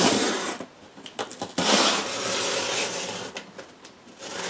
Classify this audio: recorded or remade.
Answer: recorded